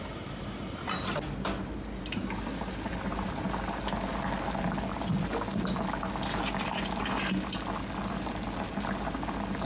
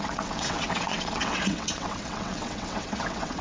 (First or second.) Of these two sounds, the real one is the first